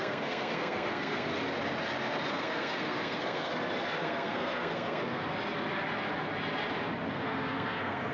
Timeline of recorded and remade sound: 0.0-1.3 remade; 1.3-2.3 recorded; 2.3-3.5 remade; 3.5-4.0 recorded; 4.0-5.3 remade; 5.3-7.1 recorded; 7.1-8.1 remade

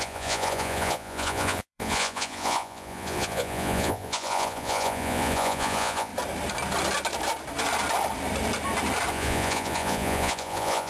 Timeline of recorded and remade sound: 0.0-6.1 remade; 6.1-9.1 recorded; 9.1-10.9 remade

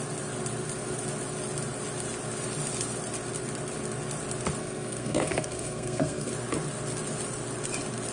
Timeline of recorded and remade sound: 0.0-4.6 recorded; 4.6-6.3 remade; 6.3-8.1 recorded

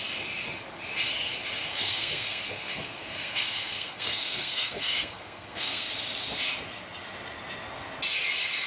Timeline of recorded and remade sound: 0.0-1.7 recorded; 1.7-5.9 remade; 5.9-8.7 recorded